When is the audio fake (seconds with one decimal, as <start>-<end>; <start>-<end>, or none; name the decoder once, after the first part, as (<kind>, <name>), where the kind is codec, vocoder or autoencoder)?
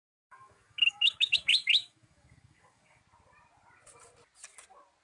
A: 0.0-3.0 (codec, DAC)